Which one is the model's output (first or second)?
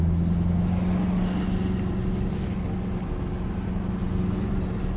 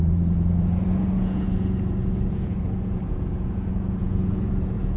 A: second